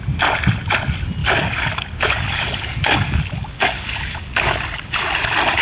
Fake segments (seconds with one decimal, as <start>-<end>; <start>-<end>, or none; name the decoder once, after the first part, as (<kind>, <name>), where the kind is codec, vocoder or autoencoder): 1.2-4.6 (codec, DAC)